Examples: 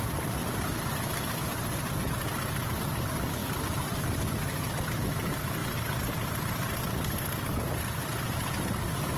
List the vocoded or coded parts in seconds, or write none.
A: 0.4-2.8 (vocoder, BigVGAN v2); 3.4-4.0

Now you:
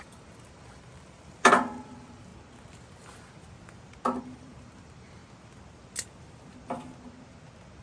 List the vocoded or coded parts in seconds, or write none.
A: 0.0-2.3 (vocoder, BigVGAN v2); 4.2-5.2

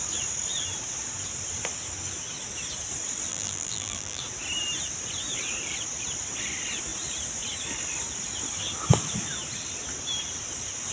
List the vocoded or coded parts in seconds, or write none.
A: 3.3-4.2 (vocoder, BigVGAN v2)

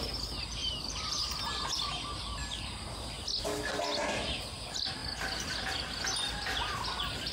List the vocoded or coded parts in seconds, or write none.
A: 0.6-1.4 (vocoder, BigVGAN v2)